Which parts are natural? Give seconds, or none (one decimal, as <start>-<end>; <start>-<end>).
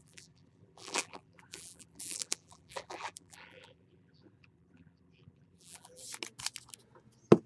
6.0-7.5